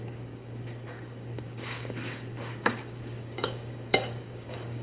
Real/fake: fake